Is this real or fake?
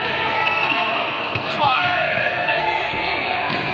fake